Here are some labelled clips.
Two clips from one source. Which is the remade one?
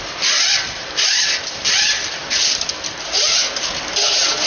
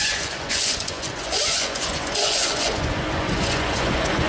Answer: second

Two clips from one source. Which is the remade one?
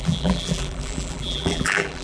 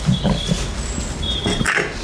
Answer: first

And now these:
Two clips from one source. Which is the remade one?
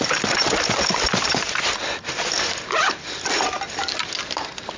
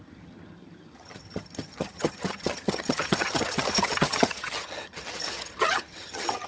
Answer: second